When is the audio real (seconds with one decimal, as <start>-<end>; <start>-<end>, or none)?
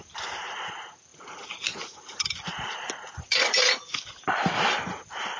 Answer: 0.0-5.4